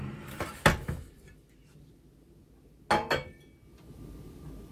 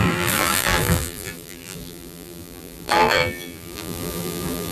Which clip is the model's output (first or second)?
second